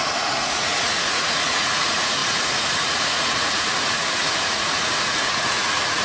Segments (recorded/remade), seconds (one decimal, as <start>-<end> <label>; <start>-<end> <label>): 0.0-6.0 remade